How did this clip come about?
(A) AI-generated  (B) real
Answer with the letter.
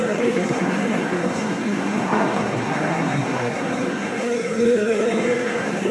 A